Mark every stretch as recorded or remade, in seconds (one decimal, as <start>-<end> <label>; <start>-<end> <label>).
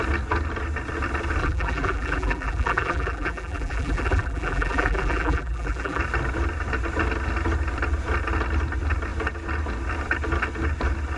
0.0-1.4 recorded; 1.4-6.0 remade; 6.0-11.2 recorded